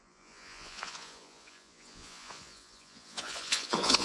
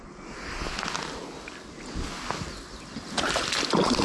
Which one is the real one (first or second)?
second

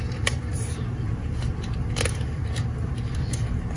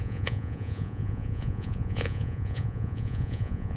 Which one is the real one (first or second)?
first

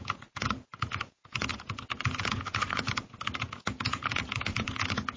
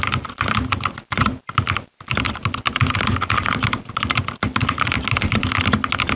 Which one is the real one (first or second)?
second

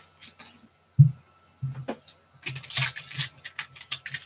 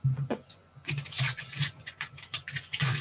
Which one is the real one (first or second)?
first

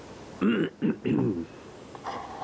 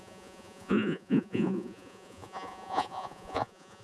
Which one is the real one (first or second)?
first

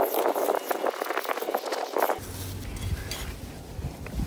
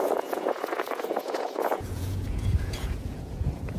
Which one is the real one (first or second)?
first